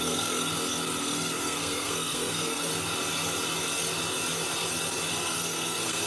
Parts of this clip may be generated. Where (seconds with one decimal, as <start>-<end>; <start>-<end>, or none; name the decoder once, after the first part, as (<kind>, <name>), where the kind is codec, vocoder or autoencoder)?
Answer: 0.0-0.5 (codec, SNAC); 1.0-2.7; 5.1-6.1

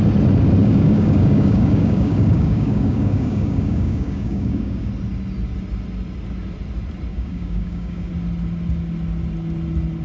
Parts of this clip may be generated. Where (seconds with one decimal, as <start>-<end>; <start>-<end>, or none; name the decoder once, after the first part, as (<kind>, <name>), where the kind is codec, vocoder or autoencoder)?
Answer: 0.6-4.9 (codec, DAC); 7.1-8.1

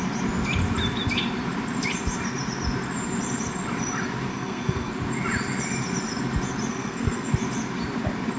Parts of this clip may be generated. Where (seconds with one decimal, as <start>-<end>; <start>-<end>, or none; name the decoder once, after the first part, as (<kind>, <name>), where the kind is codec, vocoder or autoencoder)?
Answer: 4.3-4.9 (codec, SNAC); 6.7-7.3

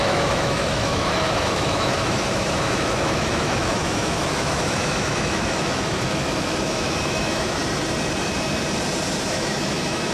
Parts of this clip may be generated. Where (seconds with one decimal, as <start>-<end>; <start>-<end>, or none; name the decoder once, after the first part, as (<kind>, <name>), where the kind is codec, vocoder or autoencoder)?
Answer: 0.0-7.6 (autoencoder, DAC-VAE); 9.2-10.1

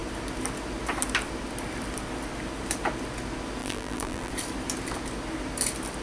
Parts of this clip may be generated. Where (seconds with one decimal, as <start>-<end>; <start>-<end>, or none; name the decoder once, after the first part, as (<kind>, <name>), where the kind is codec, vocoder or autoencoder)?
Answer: 3.6-4.3 (vocoder, BigVGAN v2)

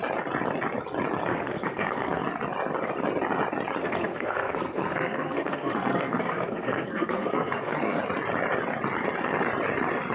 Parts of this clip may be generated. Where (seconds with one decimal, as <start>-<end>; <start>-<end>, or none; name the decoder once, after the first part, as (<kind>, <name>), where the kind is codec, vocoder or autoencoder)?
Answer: 1.3-2.2 (codec, SNAC); 3.8-8.0